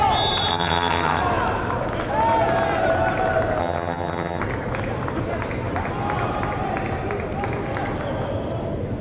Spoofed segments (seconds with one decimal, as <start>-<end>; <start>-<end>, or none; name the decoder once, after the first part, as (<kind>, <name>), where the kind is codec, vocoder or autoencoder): 0.5-1.2 (vocoder, HiFi-GAN); 3.6-4.4